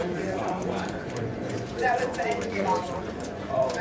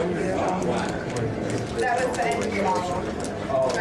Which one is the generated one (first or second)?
first